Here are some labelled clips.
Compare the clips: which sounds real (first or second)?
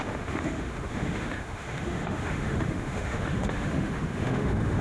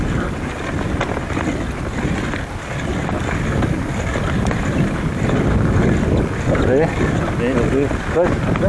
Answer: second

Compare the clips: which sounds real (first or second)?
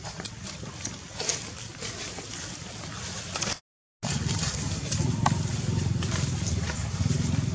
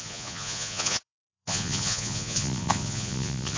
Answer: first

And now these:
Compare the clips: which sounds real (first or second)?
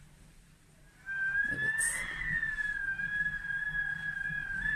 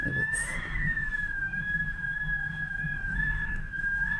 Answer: first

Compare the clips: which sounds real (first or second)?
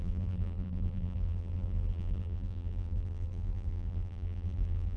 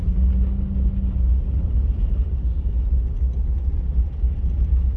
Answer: second